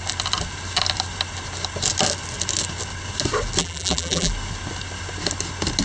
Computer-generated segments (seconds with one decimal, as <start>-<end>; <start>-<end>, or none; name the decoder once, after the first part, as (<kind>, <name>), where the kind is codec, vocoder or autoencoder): 3.6-4.3 (vocoder, BigVGAN v2)